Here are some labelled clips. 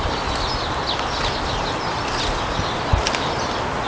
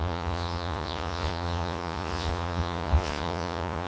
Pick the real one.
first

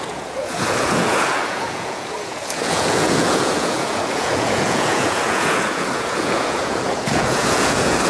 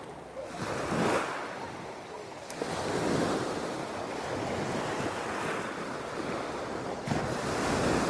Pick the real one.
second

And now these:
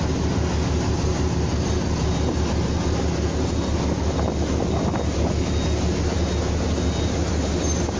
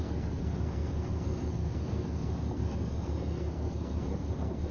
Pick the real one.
first